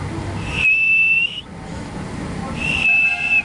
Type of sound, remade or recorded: recorded